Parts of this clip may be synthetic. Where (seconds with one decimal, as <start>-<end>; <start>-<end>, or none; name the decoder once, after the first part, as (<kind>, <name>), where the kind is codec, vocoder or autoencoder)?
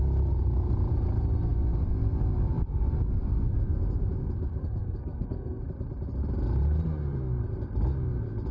4.6-5.6 (codec, SNAC)